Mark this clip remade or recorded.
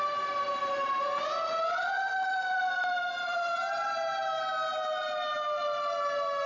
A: recorded